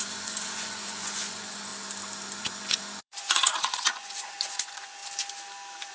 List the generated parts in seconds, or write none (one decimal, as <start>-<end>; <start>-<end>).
0.0-1.7; 2.4-5.0